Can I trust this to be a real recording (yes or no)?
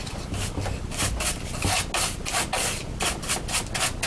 yes